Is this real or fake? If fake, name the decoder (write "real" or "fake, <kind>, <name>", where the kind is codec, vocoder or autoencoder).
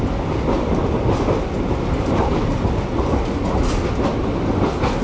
real